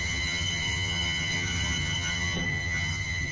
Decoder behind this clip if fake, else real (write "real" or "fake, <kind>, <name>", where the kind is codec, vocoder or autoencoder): fake, vocoder, HiFi-GAN